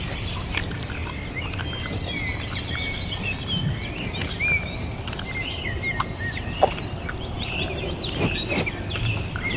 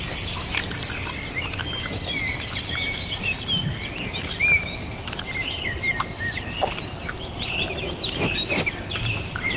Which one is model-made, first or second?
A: second